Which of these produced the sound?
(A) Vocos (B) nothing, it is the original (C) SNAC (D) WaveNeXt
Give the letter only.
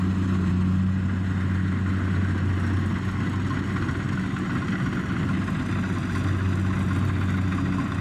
B